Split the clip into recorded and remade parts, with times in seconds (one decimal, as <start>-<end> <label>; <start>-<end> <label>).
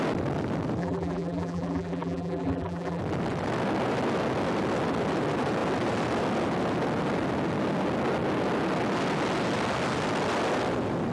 0.0-0.8 recorded; 0.8-3.0 remade; 3.0-11.1 recorded